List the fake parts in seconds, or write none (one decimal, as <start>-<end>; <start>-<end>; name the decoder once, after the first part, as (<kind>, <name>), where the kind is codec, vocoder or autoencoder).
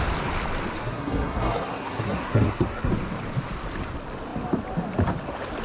0.8-2.9 (codec, SNAC)